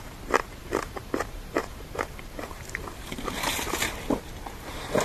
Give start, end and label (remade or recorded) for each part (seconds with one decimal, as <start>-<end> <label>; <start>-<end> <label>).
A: 0.0-0.6 recorded; 0.6-3.6 remade; 3.6-5.0 recorded